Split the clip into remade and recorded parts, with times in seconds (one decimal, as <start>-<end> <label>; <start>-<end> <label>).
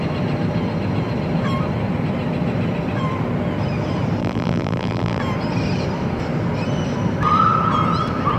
0.0-4.2 recorded; 4.2-5.2 remade; 5.2-8.4 recorded